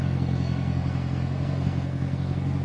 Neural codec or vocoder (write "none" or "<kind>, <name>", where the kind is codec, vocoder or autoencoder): codec, SNAC